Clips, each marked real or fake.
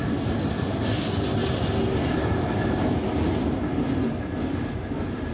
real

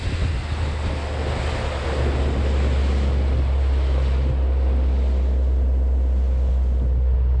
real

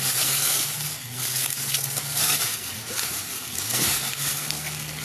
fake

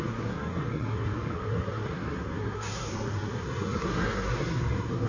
fake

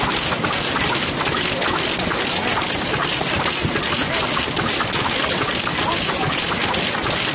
real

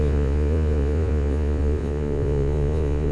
fake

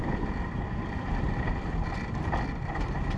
real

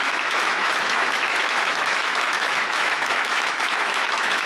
fake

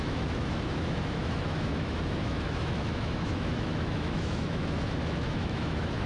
fake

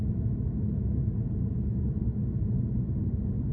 real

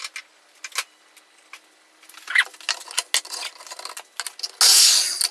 real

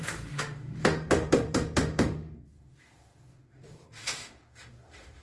fake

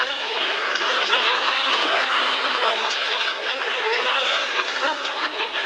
fake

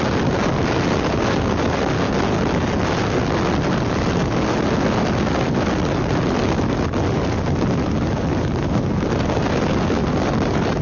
real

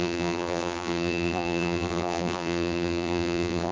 fake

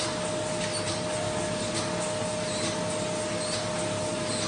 real